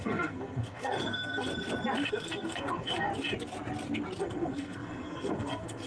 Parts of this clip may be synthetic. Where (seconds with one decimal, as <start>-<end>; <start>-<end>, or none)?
0.0-1.5; 2.1-3.1; 4.2-5.9